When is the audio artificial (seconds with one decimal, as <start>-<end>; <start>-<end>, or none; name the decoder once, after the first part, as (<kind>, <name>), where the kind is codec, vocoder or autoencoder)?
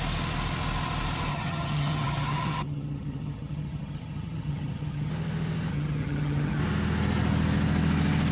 1.3-5.1 (vocoder, HiFi-GAN); 5.7-6.6